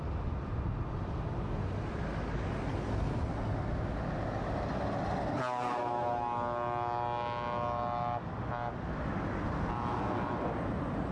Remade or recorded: recorded